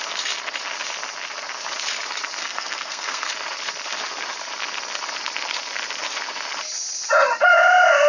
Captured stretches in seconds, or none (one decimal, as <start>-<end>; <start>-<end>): 0.0-2.4; 3.3-8.1

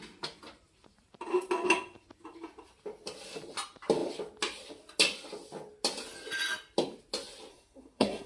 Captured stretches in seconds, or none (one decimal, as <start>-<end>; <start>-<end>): 0.0-7.5